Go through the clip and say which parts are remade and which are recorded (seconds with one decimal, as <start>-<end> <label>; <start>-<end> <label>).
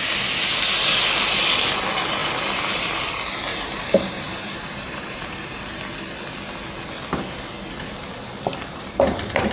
0.0-2.2 recorded; 2.2-2.9 remade; 2.9-3.5 recorded; 3.5-5.6 remade; 5.6-8.5 recorded; 8.5-9.5 remade